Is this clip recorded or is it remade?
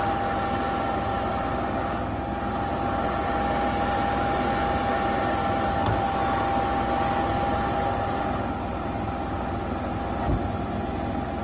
recorded